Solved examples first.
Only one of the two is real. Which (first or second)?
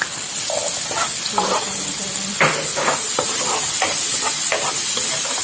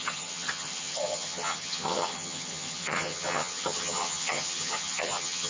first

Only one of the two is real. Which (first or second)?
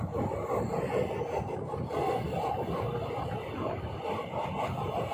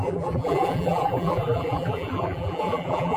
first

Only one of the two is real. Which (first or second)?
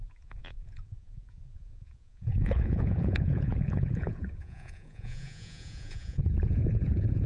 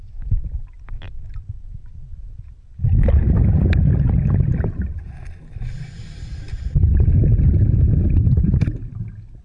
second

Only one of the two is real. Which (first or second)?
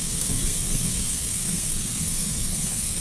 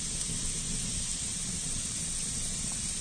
second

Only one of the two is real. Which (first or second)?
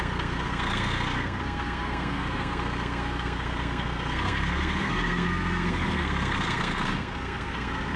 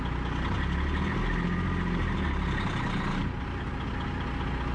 second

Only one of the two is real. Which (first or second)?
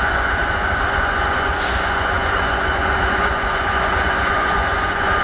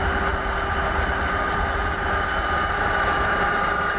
second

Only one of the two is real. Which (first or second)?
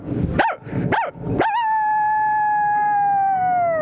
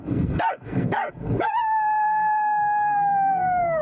first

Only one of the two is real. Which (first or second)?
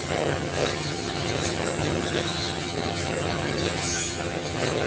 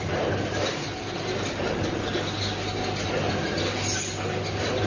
second